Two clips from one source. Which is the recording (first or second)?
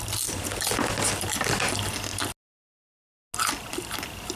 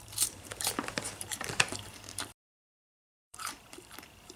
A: first